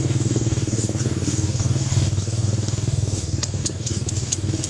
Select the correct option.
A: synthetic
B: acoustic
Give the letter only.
A